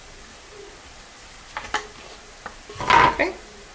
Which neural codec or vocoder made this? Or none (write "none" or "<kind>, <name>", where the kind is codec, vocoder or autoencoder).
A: none